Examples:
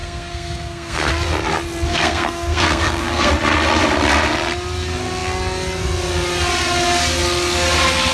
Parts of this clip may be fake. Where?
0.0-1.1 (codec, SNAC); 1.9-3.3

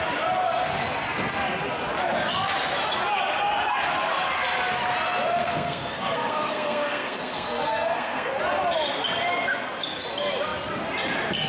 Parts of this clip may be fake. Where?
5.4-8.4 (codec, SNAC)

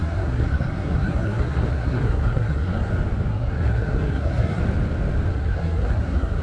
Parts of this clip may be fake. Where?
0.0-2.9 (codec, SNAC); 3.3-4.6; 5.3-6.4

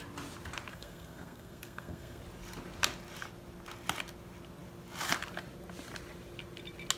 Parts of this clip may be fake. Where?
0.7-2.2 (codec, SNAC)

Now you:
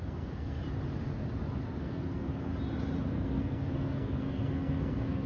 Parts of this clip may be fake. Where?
0.0-0.6 (codec, SNAC); 1.8-2.5; 3.1-5.3

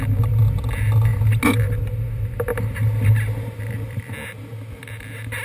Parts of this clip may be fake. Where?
none

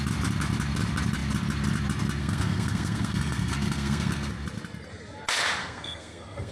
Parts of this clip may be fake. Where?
2.2-4.3 (codec, SNAC); 5.6-6.5

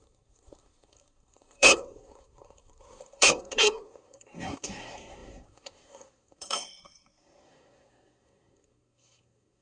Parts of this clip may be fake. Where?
0.0-9.6 (codec, SNAC)